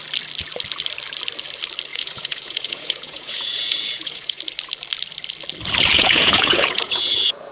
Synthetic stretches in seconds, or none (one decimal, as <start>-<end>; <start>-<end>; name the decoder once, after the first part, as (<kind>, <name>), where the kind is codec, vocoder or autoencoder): 1.9-4.4 (vocoder, Vocos); 5.9-7.5